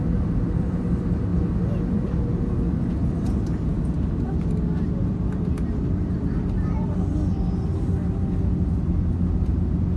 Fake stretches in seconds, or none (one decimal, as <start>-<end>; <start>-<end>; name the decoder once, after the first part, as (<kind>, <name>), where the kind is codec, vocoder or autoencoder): none